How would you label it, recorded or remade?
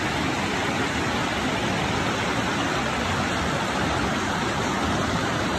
recorded